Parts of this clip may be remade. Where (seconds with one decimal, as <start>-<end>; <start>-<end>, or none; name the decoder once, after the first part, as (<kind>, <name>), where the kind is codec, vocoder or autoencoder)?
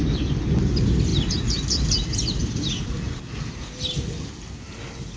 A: none